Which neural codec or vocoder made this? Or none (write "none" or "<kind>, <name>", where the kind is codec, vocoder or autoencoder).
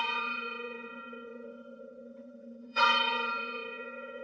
vocoder, HiFi-GAN